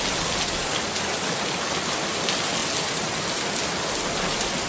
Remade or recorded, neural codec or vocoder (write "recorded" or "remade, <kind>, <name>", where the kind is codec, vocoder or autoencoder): recorded